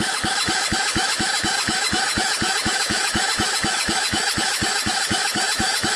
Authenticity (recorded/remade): remade